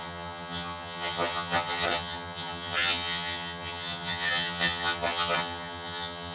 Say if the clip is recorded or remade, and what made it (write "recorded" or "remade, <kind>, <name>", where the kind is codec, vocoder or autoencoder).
remade, vocoder, HiFi-GAN